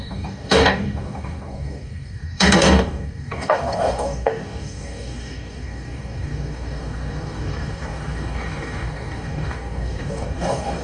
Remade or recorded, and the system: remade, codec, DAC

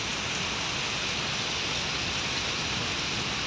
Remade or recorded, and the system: recorded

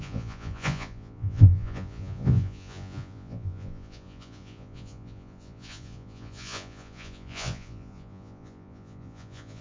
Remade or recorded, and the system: remade, vocoder, Vocos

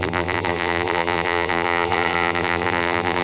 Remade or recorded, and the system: remade, vocoder, BigVGAN v2